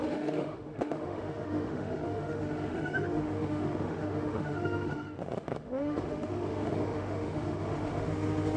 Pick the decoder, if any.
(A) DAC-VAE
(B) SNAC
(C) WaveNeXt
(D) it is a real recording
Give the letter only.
A